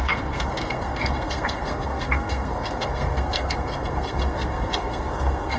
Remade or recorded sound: remade